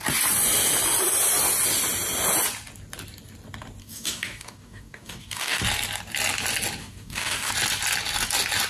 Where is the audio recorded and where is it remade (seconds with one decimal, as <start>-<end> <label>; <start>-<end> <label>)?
0.0-3.8 recorded; 3.8-5.6 remade; 5.6-6.8 recorded; 6.8-7.5 remade; 7.5-8.7 recorded